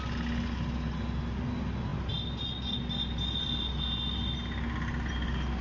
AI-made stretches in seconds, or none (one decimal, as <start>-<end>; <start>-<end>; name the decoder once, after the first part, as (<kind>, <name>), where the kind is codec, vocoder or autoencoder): none